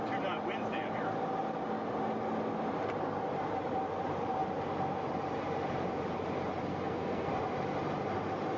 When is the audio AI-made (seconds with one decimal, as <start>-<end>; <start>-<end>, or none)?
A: 6.7-7.4